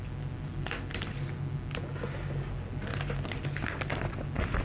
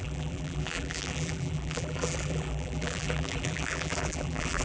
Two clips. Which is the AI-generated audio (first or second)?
second